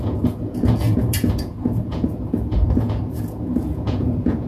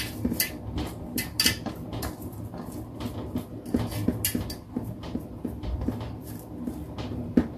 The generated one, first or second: first